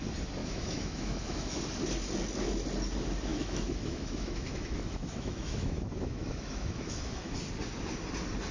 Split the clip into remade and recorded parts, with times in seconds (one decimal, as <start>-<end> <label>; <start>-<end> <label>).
0.0-0.4 recorded; 0.4-1.6 remade; 1.6-3.3 recorded; 3.3-7.4 remade; 7.4-8.5 recorded